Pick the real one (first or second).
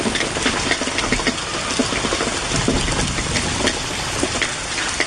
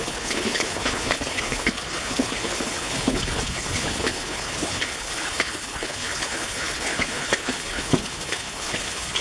first